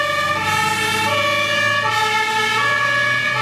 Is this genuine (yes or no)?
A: yes